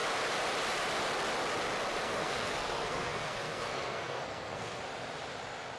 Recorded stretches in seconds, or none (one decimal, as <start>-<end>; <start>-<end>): 0.0-1.9; 4.8-5.8